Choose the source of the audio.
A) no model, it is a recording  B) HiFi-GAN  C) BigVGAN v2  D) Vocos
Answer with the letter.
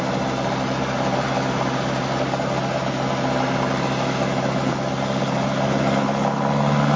A